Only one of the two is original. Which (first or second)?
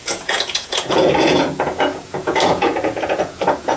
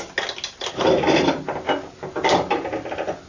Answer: second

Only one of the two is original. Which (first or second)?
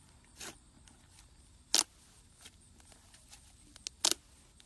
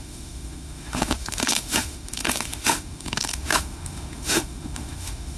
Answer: first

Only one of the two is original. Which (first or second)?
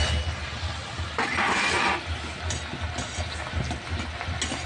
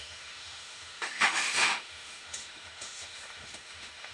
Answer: first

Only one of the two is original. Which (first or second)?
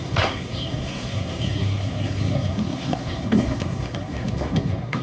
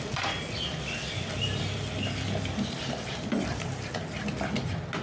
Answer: second